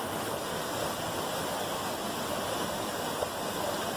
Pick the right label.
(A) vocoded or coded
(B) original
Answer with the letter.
B